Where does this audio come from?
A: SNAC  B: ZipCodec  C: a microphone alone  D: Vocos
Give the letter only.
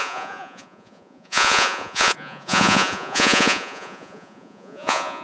D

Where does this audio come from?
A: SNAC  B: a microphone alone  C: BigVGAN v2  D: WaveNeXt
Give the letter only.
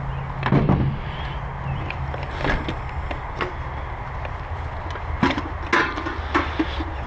B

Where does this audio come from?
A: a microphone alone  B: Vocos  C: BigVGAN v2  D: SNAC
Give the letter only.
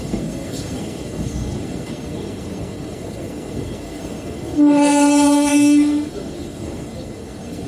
D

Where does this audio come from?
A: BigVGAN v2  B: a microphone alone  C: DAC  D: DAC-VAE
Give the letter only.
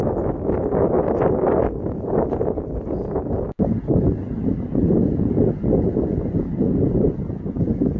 B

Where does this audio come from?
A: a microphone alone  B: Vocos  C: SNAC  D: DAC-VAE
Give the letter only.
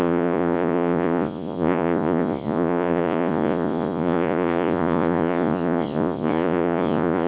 B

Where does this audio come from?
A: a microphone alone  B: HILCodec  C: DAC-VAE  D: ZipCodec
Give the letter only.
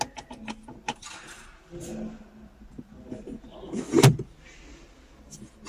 A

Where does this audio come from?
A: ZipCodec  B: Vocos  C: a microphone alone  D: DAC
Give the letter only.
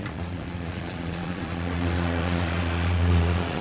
B